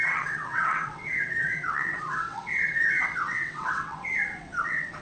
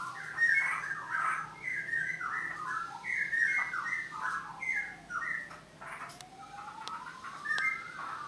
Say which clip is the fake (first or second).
first